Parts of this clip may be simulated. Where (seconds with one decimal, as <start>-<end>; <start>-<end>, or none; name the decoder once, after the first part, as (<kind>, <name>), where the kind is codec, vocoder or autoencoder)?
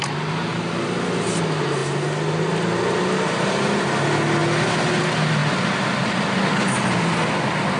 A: none